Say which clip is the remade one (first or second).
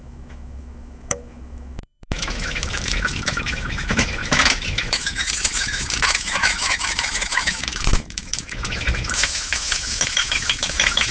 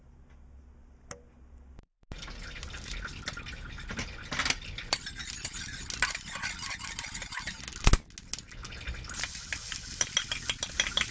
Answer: first